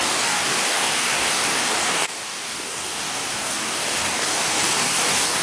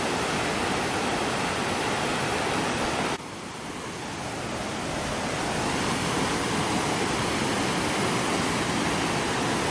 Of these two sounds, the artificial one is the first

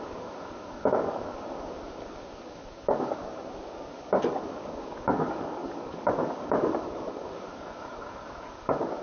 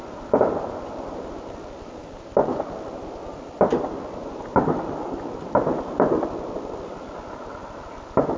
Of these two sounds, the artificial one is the first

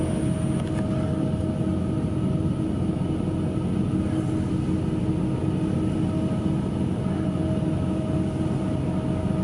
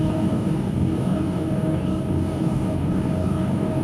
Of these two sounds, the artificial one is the second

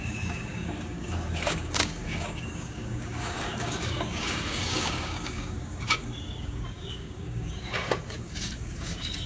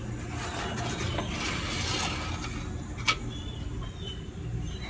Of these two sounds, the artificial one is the first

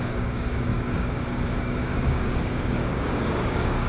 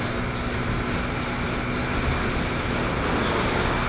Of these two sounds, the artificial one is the first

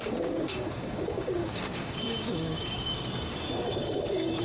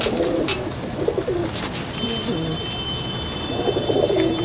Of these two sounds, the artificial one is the first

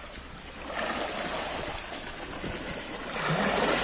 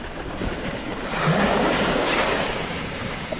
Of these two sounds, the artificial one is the second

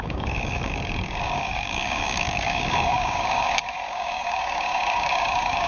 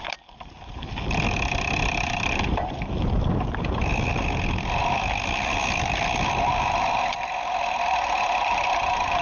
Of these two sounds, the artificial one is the first